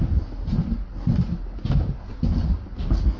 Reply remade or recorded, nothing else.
recorded